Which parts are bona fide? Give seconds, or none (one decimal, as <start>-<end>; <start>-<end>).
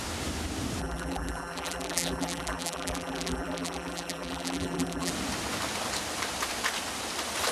0.0-0.8; 5.1-7.5